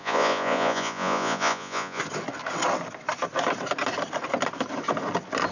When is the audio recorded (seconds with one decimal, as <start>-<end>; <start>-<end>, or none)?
2.0-5.5